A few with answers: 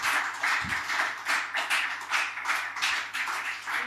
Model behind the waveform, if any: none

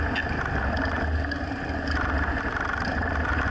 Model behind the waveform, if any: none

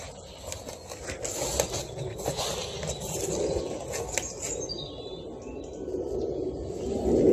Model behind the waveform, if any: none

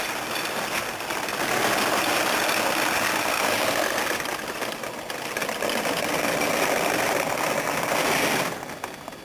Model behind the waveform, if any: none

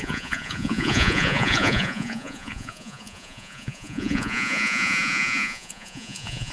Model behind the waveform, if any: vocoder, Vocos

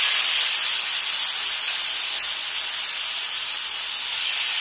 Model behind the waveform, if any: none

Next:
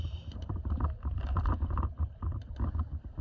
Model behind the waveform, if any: none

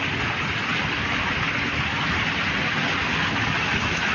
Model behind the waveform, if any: none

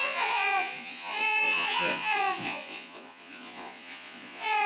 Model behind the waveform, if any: vocoder, Vocos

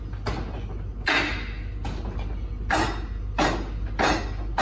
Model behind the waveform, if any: none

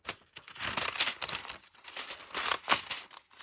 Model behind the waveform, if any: none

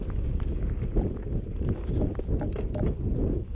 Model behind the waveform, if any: none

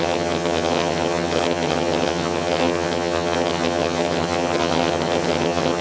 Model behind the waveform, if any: vocoder, HiFi-GAN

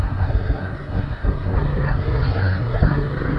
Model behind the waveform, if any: codec, SNAC